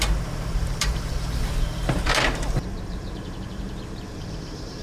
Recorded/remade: remade